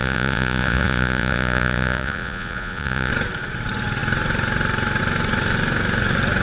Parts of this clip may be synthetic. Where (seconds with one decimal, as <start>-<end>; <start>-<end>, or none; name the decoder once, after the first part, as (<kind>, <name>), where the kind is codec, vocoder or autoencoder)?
0.0-3.1 (vocoder, Vocos)